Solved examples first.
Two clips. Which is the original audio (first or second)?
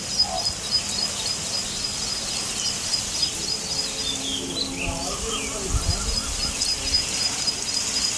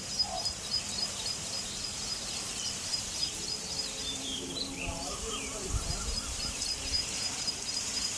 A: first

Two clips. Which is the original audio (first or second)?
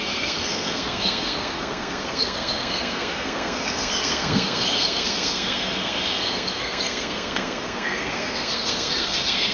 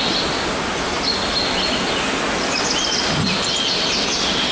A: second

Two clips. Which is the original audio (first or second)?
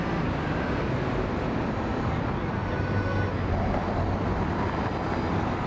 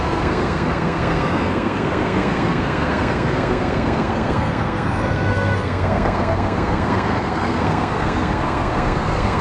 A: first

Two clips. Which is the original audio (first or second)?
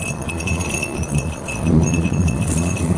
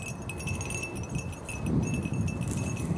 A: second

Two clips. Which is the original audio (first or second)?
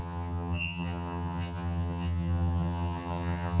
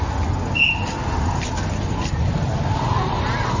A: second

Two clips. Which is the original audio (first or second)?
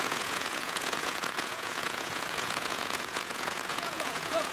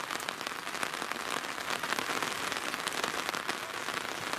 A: second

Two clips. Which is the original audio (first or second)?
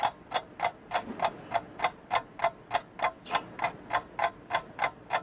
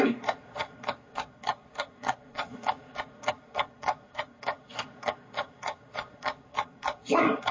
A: first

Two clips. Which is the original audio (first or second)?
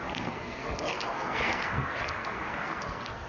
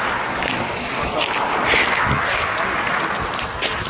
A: second